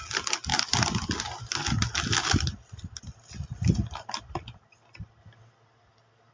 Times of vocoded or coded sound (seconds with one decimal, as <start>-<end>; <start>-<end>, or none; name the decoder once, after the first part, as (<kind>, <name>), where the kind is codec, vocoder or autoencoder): none